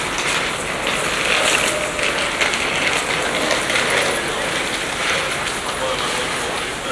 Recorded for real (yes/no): yes